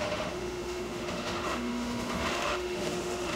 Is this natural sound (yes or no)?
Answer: no